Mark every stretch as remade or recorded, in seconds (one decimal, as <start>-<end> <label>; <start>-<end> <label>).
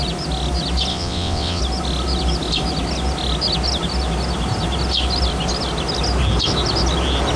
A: 0.0-0.9 recorded; 0.9-1.6 remade; 1.6-7.4 recorded